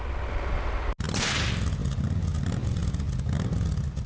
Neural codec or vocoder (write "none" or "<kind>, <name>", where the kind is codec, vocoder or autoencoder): none